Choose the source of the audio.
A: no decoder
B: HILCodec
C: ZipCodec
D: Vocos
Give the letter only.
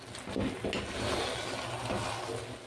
A